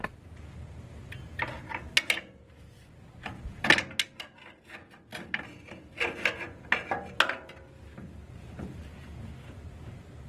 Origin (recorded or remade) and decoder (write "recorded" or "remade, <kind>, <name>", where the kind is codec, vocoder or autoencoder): recorded